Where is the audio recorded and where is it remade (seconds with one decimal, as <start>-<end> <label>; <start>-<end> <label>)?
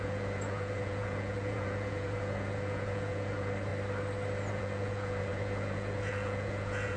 0.0-3.7 remade; 3.7-4.5 recorded; 4.5-7.0 remade